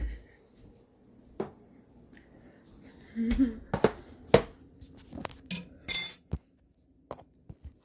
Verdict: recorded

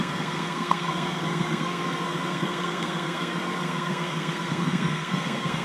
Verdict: remade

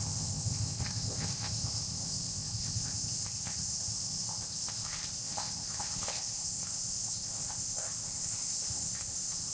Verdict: remade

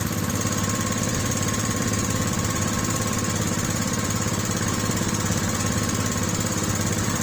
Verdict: remade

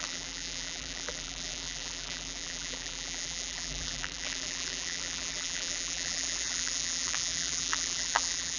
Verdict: remade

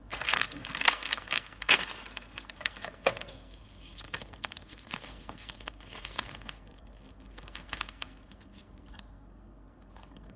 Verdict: remade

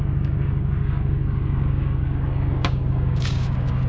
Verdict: remade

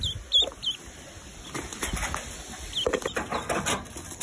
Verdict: recorded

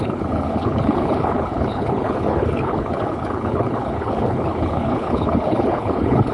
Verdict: remade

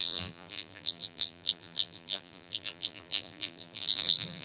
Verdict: remade